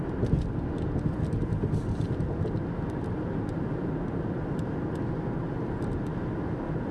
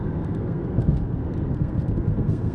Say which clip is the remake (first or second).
second